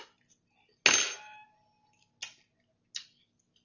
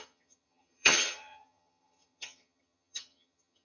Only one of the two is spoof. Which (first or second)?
second